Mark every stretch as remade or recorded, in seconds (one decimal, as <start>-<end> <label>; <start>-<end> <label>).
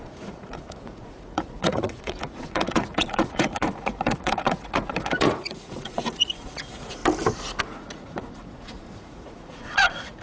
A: 0.0-7.0 remade; 7.0-7.6 recorded; 7.6-10.2 remade